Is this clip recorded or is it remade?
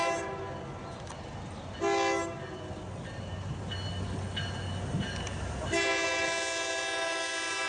recorded